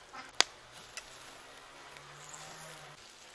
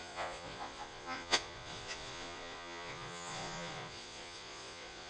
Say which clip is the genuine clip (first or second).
first